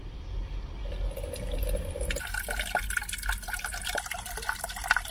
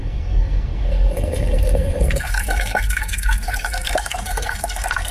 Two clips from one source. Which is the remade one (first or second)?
second